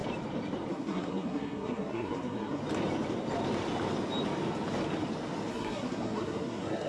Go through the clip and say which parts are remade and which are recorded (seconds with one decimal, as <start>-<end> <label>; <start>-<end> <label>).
0.0-0.7 recorded; 0.7-2.6 remade; 2.6-5.5 recorded; 5.5-6.9 remade